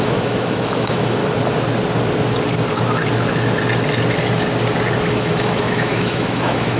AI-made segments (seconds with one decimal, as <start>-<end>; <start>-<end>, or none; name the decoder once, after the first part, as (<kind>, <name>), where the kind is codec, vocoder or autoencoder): 0.0-1.2 (autoencoder, DAC-VAE); 5.1-6.8